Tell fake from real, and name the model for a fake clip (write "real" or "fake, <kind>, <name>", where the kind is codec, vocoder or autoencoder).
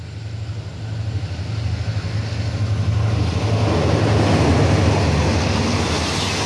real